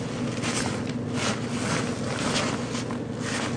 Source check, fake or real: real